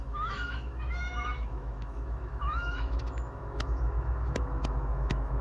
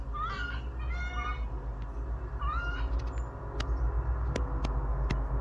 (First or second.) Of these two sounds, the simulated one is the first